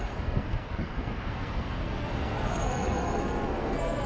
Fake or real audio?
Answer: fake